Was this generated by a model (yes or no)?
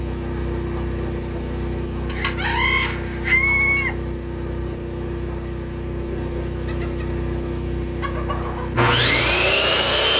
no